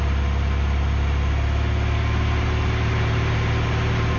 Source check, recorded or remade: recorded